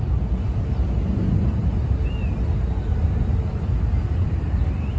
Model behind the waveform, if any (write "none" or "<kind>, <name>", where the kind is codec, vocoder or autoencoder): none